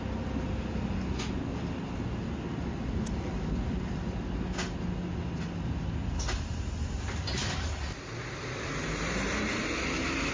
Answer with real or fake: real